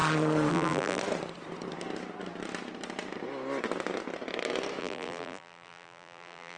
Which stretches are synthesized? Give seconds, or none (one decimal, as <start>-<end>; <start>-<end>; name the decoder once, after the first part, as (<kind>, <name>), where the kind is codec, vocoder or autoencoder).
0.5-1.0 (vocoder, BigVGAN v2); 4.8-6.6